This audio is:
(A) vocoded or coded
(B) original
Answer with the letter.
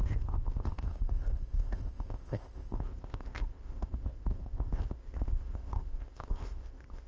A